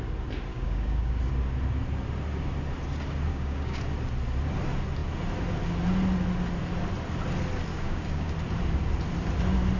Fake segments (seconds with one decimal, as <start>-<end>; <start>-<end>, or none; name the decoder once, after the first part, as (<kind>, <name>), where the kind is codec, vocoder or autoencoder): 0.5-1.2 (codec, DAC); 3.3-3.8; 7.7-8.3